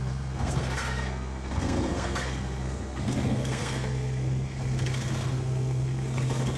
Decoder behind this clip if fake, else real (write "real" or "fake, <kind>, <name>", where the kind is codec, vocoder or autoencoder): fake, codec, SNAC